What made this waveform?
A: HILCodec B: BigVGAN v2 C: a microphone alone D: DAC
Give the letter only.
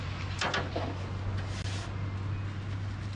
C